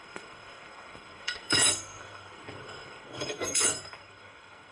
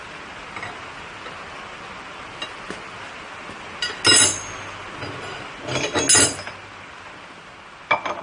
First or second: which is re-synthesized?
first